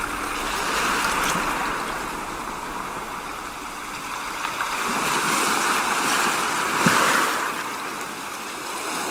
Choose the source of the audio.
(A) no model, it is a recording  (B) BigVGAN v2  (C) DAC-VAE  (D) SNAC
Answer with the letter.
A